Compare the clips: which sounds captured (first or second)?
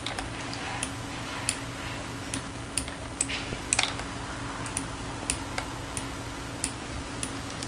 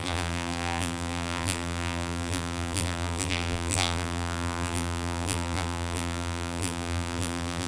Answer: first